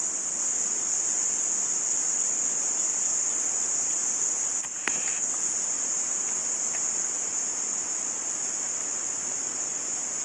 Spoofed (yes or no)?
no